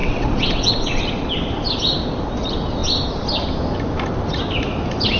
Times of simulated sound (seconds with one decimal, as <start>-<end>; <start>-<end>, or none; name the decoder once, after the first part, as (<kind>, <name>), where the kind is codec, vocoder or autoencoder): 0.0-0.7 (vocoder, WaveNeXt)